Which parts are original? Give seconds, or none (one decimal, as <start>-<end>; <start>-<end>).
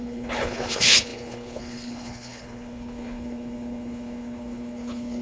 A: none